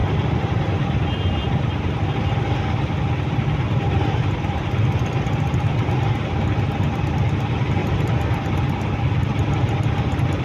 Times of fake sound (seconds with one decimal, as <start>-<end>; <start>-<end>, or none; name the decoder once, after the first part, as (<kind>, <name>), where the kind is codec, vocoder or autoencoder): none